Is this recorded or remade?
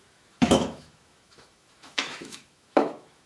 remade